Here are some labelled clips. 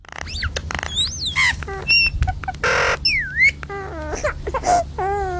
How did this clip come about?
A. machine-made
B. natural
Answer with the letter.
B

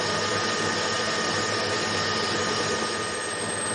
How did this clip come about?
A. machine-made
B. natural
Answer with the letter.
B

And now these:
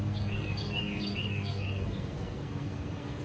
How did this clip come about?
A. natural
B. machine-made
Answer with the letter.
B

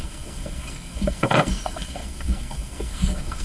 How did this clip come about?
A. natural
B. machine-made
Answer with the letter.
B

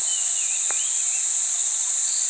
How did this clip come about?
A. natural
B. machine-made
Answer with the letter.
A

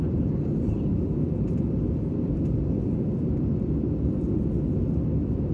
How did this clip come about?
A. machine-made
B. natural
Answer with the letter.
B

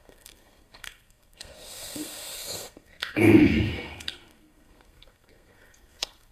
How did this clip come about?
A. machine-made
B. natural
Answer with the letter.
A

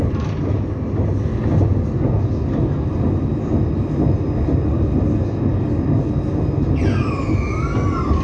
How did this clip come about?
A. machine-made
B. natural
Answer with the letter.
B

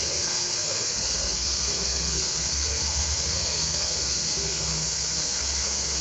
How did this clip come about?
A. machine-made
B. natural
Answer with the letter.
A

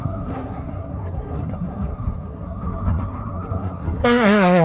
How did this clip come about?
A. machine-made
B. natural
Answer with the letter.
A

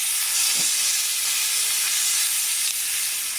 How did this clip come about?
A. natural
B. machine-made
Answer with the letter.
A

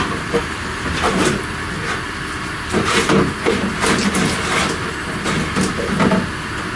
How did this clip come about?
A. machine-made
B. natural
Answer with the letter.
B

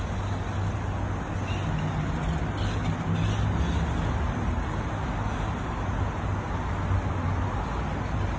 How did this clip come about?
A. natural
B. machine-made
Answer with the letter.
A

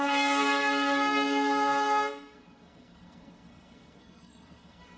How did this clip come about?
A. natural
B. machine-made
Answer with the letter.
B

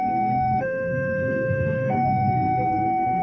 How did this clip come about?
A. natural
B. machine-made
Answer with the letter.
B